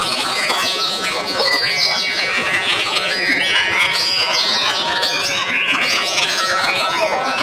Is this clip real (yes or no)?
no